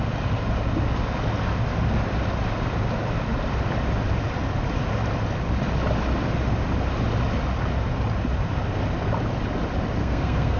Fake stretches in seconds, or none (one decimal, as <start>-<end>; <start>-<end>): 10.0-10.6